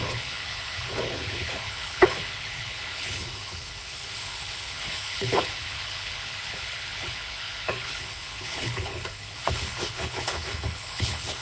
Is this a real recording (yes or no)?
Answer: no